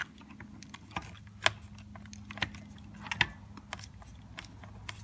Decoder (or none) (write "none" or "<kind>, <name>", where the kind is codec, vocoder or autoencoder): none